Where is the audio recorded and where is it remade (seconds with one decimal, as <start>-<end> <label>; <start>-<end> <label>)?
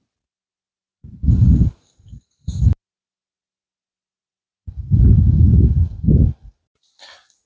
0.0-0.9 recorded; 0.9-2.6 remade; 2.6-5.5 recorded; 5.5-6.8 remade; 6.8-7.5 recorded